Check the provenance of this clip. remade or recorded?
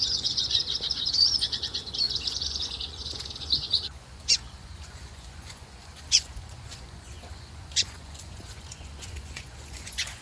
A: remade